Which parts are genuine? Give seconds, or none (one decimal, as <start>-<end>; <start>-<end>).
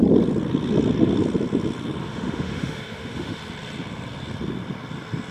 0.0-2.0; 3.4-5.3